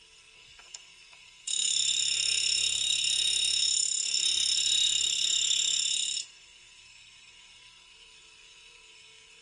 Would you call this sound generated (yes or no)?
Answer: yes